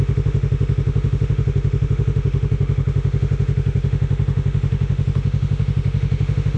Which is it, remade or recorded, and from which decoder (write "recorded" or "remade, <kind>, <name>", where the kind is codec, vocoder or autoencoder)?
remade, autoencoder, DAC-VAE